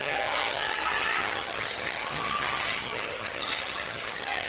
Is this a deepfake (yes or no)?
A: yes